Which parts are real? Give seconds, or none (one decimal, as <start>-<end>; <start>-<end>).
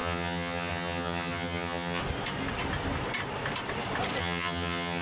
2.0-4.2